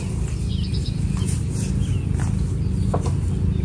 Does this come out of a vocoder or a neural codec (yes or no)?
no